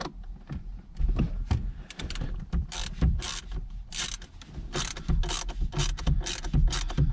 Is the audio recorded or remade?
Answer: recorded